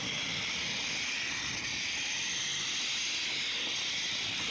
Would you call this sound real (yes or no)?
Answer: yes